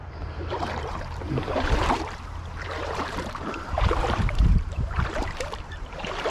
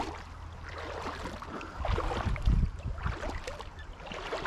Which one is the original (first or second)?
second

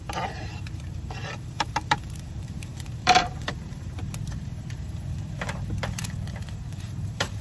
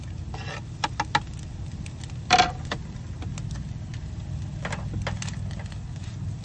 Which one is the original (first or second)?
second